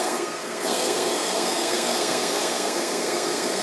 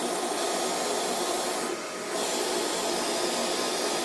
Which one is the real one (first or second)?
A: second